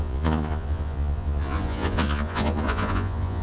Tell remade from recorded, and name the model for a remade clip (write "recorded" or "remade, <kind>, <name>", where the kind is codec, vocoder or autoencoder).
remade, vocoder, Vocos